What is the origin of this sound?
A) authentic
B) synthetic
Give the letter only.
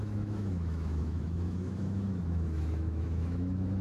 B